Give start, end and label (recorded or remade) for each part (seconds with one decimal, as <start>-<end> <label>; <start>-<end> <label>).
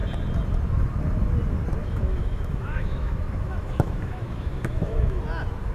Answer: 0.0-1.8 recorded; 1.8-5.2 remade; 5.2-5.7 recorded